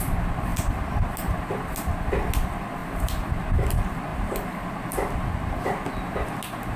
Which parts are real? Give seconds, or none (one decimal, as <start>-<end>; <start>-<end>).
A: 0.0-2.8; 3.3-6.8